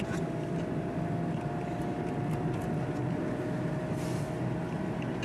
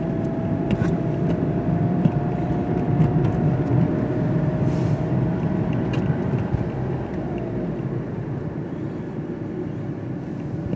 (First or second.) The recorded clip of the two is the first